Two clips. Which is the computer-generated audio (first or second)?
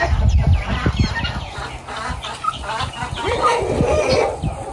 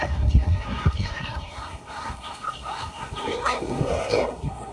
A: second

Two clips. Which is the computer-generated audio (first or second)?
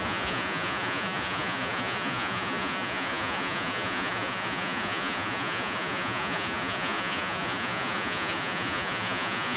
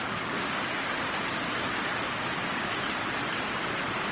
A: first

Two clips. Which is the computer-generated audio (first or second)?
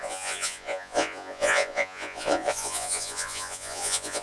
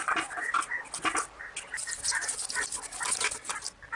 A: first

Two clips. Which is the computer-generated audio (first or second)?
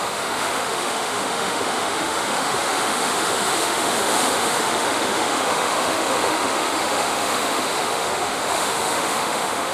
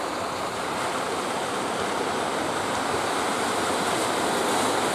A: first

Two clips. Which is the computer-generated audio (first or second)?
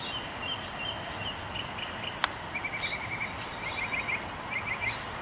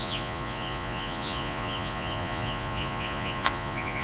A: second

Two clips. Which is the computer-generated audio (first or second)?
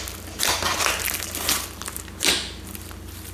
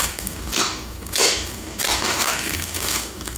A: second